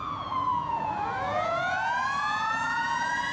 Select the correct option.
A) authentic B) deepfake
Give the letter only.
B